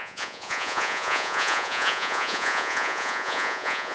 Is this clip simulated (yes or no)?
yes